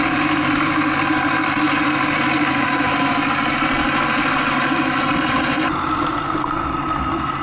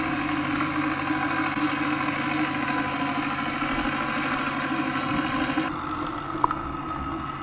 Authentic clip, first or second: second